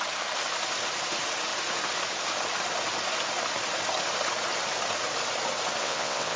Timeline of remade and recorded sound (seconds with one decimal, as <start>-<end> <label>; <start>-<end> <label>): 0.0-5.8 recorded; 5.8-6.4 remade